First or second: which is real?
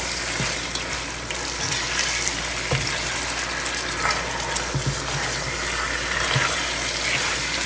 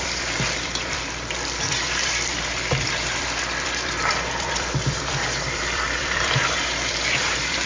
first